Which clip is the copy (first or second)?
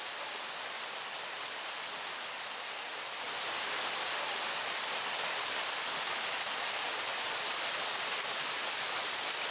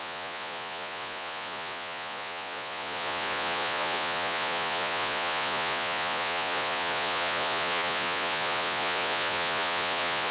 second